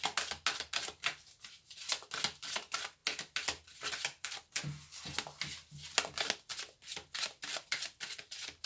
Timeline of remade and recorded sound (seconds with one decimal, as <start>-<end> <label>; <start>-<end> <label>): 0.0-8.7 recorded